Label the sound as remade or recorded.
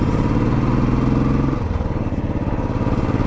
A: recorded